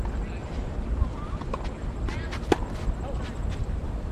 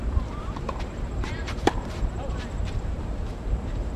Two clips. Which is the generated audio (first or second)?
second